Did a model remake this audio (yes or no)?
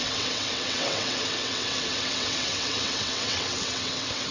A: yes